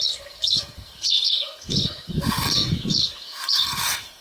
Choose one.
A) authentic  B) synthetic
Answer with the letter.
B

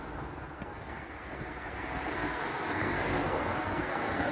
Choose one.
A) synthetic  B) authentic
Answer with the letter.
A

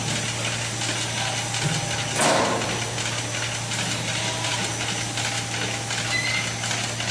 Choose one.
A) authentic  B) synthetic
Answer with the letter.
A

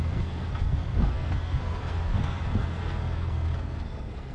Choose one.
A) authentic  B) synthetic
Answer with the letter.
B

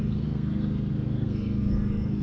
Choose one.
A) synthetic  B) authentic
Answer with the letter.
A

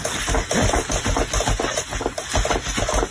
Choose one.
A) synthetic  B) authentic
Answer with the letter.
B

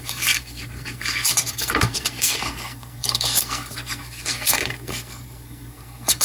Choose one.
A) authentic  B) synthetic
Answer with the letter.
B